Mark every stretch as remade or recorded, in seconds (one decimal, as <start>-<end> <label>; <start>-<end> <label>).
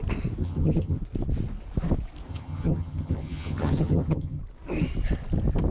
0.0-0.4 recorded; 0.4-1.0 remade; 1.0-2.3 recorded; 2.3-4.4 remade; 4.4-5.7 recorded